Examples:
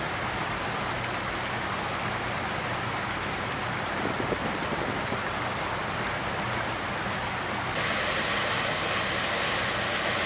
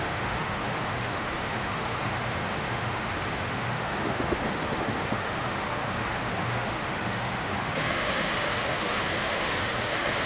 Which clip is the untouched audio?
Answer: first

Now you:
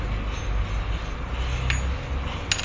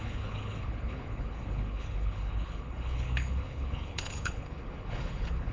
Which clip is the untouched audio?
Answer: first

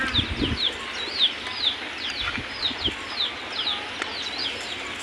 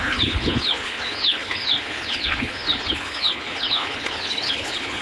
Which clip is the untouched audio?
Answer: first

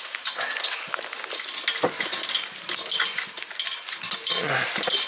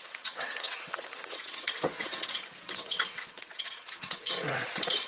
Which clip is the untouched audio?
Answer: first